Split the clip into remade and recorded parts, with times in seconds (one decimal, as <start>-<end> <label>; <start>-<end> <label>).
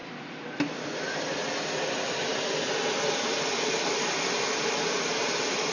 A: 0.0-5.7 recorded